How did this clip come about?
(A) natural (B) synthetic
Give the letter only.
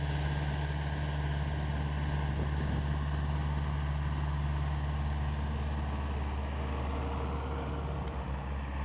A